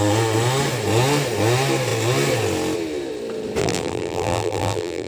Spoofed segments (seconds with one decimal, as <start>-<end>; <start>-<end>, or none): 3.6-5.1